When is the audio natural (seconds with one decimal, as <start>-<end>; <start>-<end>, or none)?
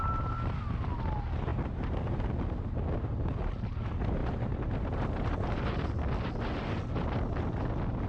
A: 0.0-1.5; 2.2-8.1